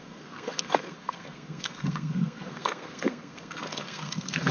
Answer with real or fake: fake